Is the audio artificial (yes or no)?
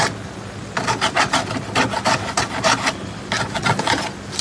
no